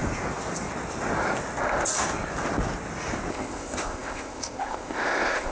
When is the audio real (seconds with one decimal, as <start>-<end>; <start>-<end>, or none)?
0.0-3.3